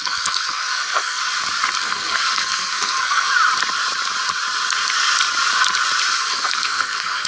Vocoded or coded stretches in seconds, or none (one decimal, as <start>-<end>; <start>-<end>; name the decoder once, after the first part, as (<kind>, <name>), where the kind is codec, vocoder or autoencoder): 0.0-1.2 (codec, SNAC); 1.8-3.3; 6.2-7.3